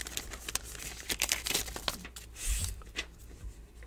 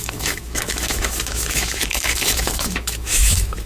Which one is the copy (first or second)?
second